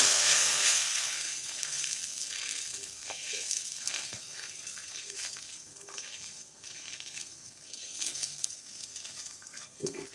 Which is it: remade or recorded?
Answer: remade